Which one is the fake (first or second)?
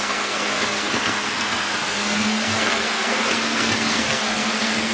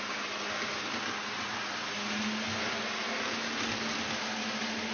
first